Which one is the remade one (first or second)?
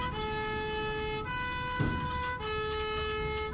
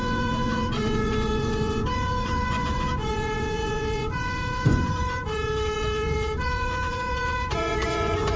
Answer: second